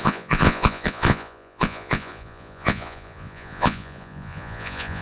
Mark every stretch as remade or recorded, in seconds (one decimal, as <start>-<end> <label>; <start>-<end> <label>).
0.0-5.0 remade